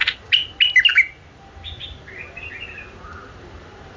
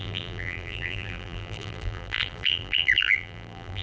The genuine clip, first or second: first